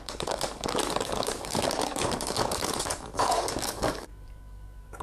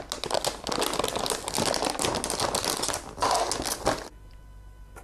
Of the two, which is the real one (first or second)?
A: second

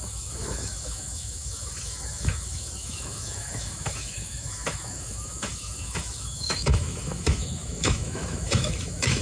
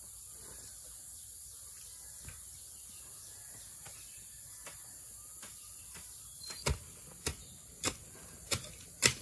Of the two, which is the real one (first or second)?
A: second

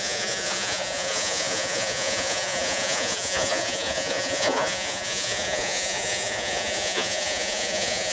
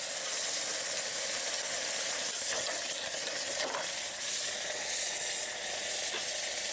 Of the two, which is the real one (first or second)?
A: second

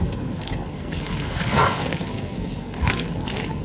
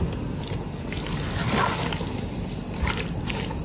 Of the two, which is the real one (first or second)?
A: second